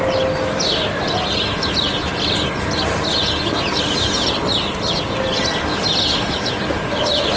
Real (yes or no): yes